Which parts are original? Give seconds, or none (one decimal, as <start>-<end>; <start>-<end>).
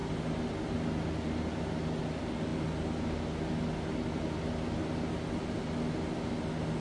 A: 0.0-6.8